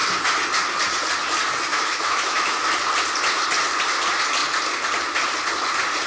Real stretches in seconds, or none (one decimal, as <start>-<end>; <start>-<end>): 0.0-1.7; 2.7-6.1